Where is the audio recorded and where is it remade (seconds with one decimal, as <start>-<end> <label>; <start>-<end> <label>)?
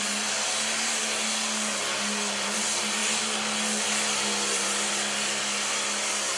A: 0.0-6.4 recorded